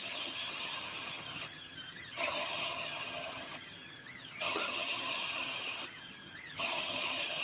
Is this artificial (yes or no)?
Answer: yes